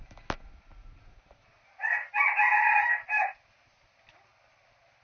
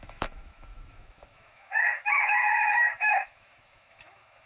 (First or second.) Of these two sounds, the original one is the first